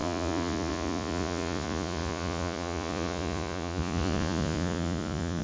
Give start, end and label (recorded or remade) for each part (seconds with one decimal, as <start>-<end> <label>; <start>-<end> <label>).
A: 0.0-5.4 remade